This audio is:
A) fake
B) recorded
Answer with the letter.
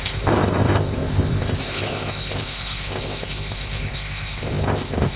A